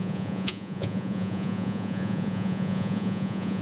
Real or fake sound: fake